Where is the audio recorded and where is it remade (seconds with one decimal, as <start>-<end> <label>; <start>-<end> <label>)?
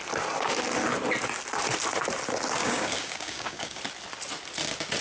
0.0-2.6 recorded; 2.6-3.8 remade; 3.8-5.0 recorded